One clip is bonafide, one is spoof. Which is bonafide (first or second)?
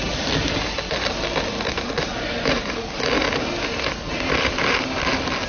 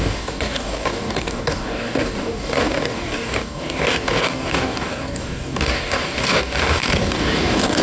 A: first